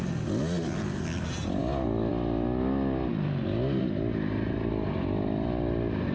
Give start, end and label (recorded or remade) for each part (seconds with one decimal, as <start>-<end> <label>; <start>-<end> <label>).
0.0-6.1 recorded